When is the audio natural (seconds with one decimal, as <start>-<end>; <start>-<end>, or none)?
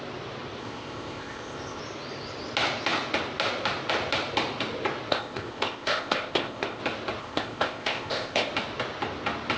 0.0-0.6; 1.8-5.1; 6.8-7.2; 8.5-9.6